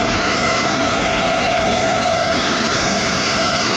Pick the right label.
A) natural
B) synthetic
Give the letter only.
B